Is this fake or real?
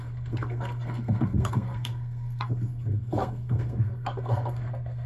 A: fake